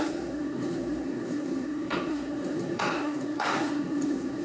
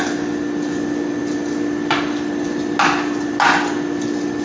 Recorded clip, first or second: second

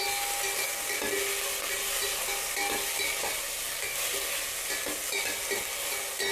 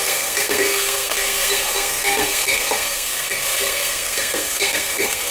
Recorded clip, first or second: first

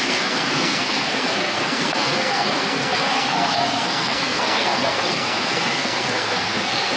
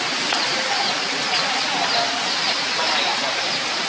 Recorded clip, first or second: second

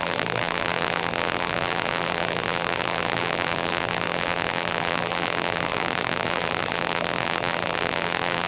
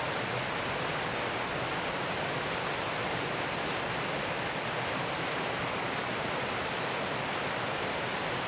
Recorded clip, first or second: second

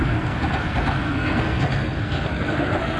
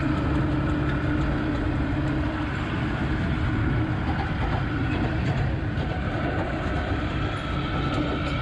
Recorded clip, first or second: second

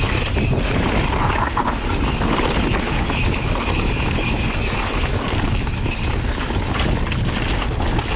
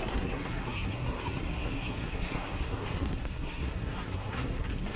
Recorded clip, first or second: first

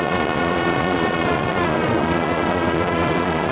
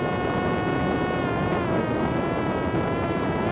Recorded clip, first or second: second